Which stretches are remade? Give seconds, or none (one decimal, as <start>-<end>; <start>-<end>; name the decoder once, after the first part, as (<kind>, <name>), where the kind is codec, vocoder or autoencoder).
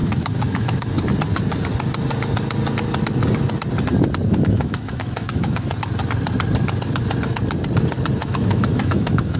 0.0-1.0 (autoencoder, DAC-VAE); 4.3-5.7; 8.2-9.4